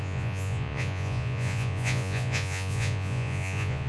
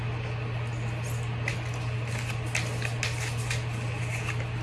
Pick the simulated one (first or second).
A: first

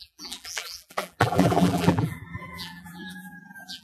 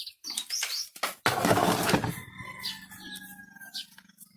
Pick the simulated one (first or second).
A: first